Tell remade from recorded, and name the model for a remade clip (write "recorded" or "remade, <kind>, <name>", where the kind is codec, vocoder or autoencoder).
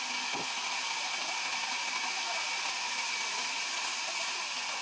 recorded